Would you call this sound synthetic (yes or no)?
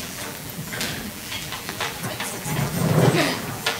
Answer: yes